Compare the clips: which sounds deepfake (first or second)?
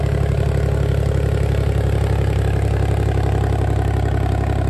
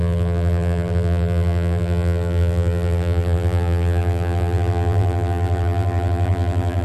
second